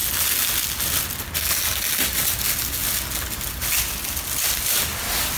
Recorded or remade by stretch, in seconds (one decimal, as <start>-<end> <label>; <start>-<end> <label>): 0.0-5.4 recorded